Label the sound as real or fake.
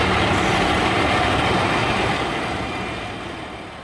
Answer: real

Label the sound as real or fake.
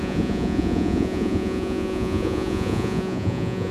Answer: fake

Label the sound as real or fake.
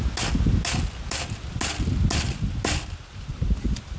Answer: real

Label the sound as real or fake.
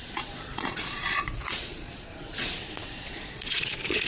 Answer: fake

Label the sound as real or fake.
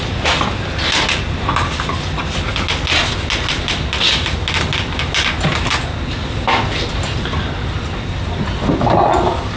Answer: real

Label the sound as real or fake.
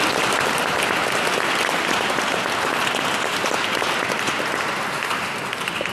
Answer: real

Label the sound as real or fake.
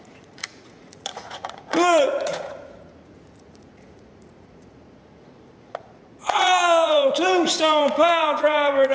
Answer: fake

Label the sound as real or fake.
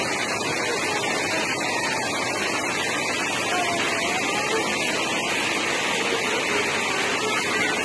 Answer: real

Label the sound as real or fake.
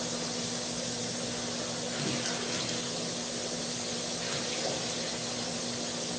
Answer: real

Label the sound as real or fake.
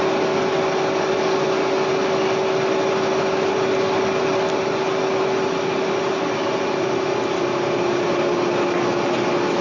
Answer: real